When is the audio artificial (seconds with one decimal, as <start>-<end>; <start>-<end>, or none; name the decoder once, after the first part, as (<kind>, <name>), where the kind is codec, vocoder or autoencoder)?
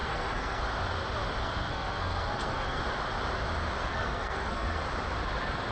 0.0-0.6 (codec, SNAC); 1.4-2.8; 3.8-4.8